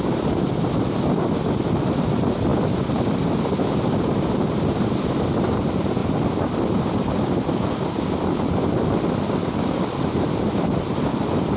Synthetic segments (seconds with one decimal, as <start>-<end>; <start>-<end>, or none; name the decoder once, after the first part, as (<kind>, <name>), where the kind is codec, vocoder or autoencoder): 0.0-2.5 (vocoder, BigVGAN v2); 4.8-6.0; 8.4-9.4; 10.2-11.6